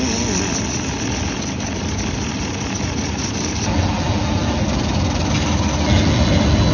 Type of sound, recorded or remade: recorded